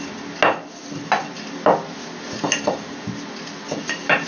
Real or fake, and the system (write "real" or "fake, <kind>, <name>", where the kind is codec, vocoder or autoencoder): real